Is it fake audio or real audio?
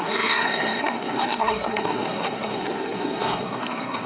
fake